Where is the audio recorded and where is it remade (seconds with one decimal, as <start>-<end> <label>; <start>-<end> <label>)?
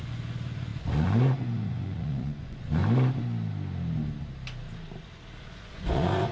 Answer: 0.0-2.8 remade; 2.8-5.4 recorded; 5.4-6.3 remade